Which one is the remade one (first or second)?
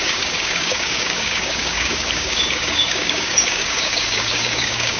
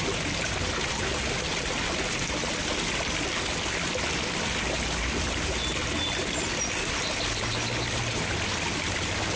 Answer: first